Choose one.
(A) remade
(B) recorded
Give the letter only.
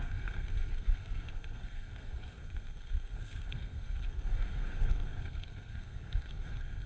A